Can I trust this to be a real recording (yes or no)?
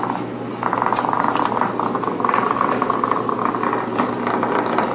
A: yes